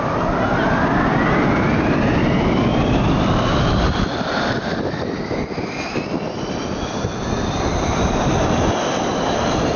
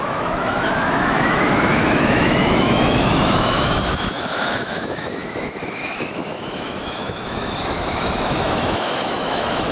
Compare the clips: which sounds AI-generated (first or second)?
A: second